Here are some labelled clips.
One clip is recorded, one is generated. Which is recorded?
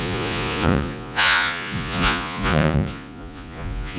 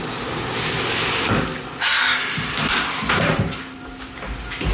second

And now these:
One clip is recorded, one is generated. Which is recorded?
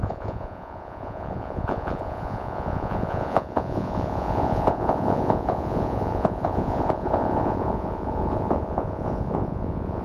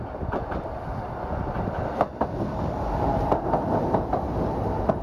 second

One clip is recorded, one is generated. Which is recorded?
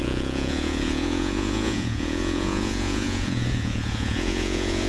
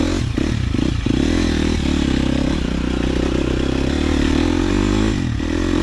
second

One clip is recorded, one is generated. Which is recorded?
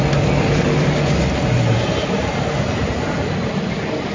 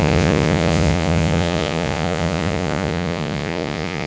first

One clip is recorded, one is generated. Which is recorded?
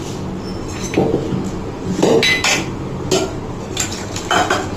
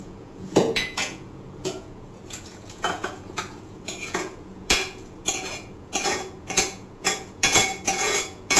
first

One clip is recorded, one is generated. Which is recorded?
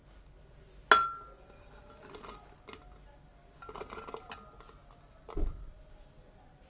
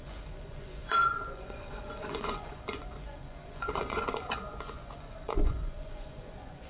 first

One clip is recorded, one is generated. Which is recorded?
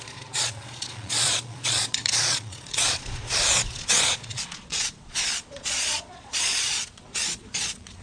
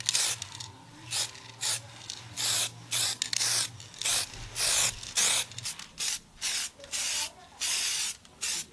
second